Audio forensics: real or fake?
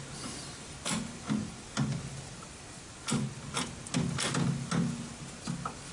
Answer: real